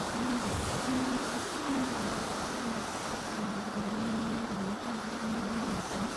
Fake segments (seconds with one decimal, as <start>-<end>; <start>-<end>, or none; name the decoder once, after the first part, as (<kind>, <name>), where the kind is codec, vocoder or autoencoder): 0.0-2.3 (vocoder, BigVGAN v2); 3.9-6.2